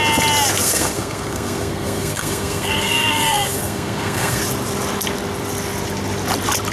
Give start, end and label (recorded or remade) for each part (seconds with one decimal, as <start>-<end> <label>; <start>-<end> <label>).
0.0-0.6 recorded; 0.6-4.4 remade; 4.4-6.7 recorded